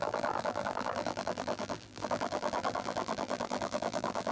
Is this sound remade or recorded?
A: remade